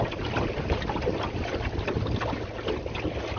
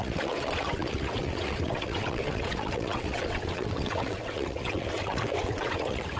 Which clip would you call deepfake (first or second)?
second